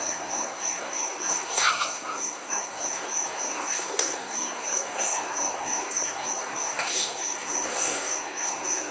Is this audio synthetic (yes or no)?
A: yes